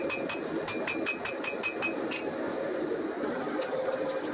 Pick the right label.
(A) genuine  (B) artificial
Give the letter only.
A